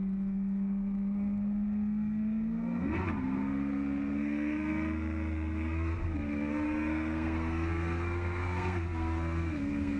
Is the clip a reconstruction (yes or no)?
yes